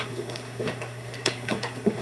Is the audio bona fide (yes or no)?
no